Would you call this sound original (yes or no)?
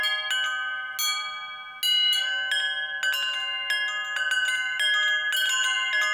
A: yes